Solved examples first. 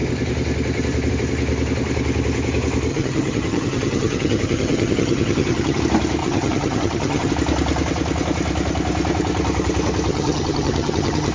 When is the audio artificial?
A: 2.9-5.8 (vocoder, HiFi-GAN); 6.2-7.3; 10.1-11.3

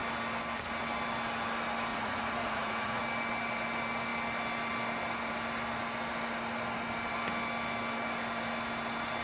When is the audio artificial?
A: 1.9-3.0 (vocoder, Vocos)